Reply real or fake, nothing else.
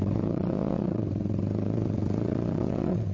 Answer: fake